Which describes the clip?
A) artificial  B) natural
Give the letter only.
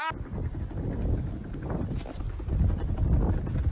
B